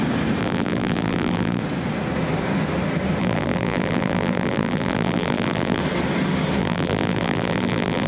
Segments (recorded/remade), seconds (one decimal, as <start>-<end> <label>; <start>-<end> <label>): 0.0-0.4 recorded; 0.4-1.6 remade; 1.6-3.2 recorded; 3.2-5.8 remade; 5.8-6.6 recorded; 6.6-8.1 remade

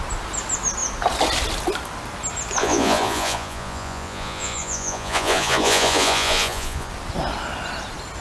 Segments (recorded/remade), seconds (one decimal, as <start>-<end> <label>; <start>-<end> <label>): 0.0-2.6 recorded; 2.6-6.9 remade; 6.9-8.2 recorded

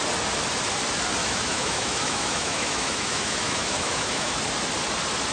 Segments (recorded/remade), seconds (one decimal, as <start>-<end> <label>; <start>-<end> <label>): 0.0-1.2 recorded; 1.2-4.4 remade; 4.4-5.3 recorded

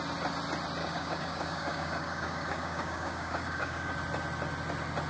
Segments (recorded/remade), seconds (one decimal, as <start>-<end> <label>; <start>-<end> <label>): 0.0-0.8 recorded; 0.8-3.9 remade; 3.9-5.1 recorded

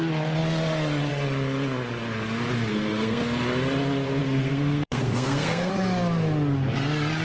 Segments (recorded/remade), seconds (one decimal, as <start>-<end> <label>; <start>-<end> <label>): 0.0-2.7 recorded; 2.7-3.2 remade; 3.2-4.2 recorded; 4.2-5.7 remade; 5.7-7.2 recorded